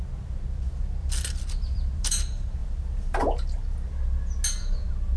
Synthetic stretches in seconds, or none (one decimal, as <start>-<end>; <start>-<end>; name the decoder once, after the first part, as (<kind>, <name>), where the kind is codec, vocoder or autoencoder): 1.0-2.2 (vocoder, BigVGAN v2); 2.6-3.2